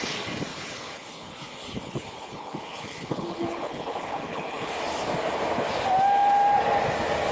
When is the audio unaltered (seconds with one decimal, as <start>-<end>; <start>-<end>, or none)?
0.0-0.5; 4.7-7.3